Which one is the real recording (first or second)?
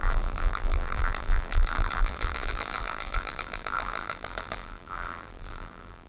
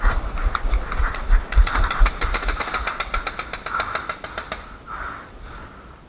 second